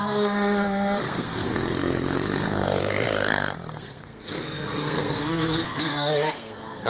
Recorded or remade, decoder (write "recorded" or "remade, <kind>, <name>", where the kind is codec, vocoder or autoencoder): remade, codec, SNAC